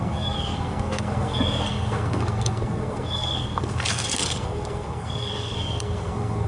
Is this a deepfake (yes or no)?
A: yes